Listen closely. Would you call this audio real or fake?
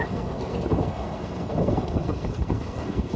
fake